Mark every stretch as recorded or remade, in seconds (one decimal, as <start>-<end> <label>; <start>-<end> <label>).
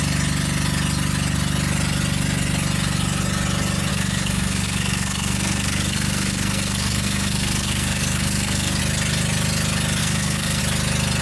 0.0-3.9 recorded; 3.9-8.8 remade; 8.8-10.0 recorded; 10.0-10.6 remade; 10.6-11.2 recorded